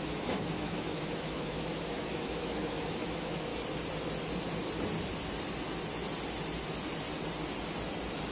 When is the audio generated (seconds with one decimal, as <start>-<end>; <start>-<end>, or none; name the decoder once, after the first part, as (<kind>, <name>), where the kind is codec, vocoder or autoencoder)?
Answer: 0.0-3.5 (autoencoder, DAC-VAE)